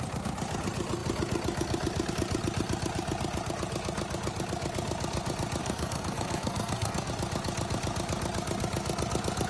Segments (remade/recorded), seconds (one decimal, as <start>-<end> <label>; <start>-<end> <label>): 0.0-5.6 recorded; 5.6-7.1 remade; 7.1-9.5 recorded